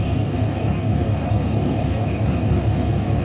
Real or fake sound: fake